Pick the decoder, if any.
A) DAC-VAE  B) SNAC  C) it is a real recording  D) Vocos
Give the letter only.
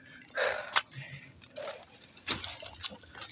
C